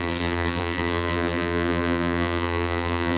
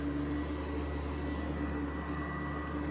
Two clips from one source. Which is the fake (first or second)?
first